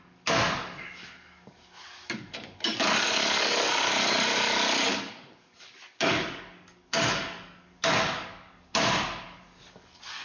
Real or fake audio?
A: fake